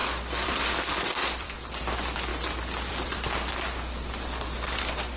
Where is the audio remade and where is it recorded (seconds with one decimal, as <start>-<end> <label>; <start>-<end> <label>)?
0.0-0.5 remade; 0.5-1.2 recorded; 1.2-1.8 remade; 1.8-2.3 recorded; 2.3-3.5 remade; 3.5-5.2 recorded